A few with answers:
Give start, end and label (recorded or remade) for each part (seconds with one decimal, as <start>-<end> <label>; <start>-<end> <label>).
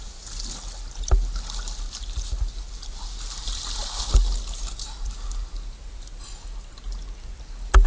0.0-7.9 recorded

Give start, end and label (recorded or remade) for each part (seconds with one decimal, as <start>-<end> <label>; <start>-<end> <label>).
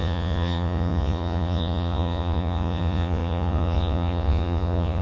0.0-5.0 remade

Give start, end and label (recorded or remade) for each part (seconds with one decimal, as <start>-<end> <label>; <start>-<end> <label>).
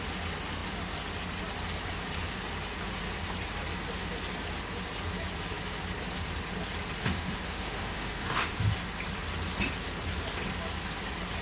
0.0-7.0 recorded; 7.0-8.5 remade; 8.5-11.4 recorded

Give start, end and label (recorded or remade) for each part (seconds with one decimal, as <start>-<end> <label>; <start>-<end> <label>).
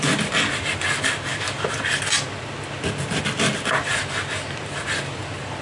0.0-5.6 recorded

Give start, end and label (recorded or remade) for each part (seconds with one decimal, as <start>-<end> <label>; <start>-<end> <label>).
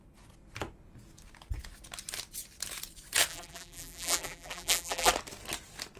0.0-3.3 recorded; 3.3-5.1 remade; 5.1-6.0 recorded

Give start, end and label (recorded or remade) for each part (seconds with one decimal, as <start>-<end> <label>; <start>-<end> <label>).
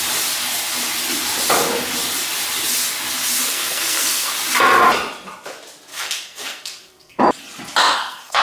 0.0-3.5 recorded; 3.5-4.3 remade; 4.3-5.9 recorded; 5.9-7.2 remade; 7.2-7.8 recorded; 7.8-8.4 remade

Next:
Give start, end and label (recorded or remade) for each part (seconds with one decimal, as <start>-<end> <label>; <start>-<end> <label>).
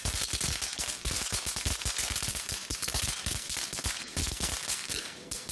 0.0-5.5 remade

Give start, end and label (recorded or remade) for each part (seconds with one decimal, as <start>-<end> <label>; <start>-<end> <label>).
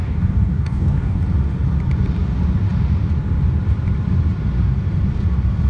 0.0-1.2 remade; 1.2-5.7 recorded